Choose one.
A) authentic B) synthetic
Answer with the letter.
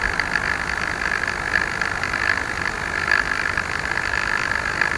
A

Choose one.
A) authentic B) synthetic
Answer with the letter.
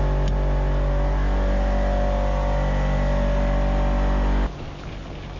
A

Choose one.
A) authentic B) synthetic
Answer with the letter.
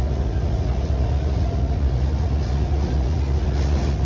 B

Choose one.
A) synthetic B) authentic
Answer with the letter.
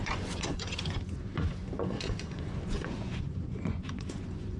A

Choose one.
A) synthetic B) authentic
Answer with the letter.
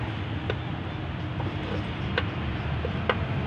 B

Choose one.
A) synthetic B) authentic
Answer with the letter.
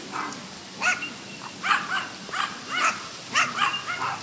B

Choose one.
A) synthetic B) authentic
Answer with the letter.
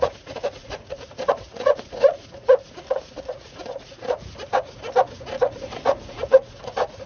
A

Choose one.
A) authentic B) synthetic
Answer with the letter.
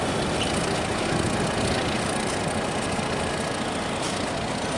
A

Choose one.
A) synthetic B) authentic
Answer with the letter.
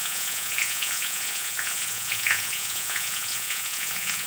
A